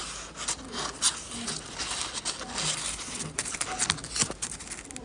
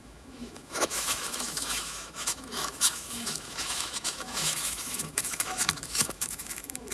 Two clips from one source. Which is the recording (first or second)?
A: first